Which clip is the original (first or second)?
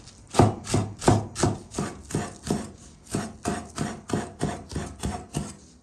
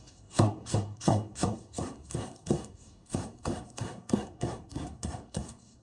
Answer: first